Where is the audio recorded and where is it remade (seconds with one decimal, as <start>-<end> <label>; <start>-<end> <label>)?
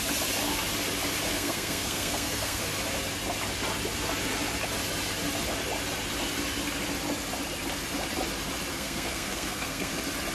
0.0-1.3 recorded; 1.3-2.6 remade; 2.6-8.7 recorded; 8.7-9.9 remade; 9.9-10.3 recorded